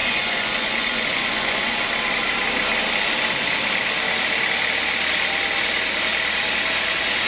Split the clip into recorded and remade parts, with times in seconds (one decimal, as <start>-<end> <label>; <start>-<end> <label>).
0.0-1.9 remade; 1.9-7.3 recorded